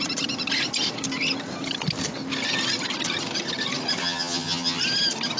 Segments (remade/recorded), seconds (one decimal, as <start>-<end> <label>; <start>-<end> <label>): 0.0-4.0 recorded; 4.0-4.8 remade; 4.8-5.4 recorded